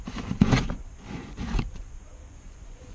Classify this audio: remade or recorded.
remade